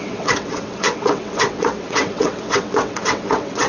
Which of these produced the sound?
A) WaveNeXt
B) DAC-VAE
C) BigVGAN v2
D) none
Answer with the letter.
A